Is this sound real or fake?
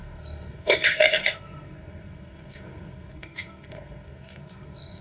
fake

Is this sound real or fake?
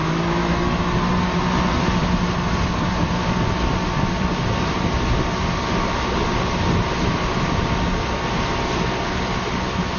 real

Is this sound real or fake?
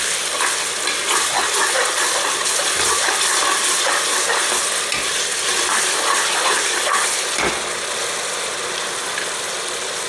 real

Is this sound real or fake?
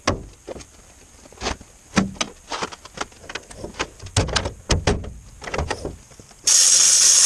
real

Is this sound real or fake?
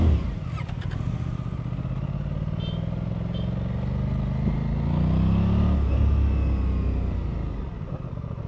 real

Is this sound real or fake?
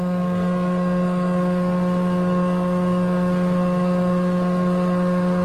fake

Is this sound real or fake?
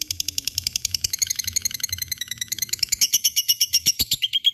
fake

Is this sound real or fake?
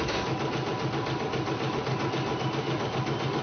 real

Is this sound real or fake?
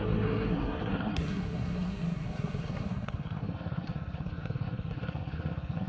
fake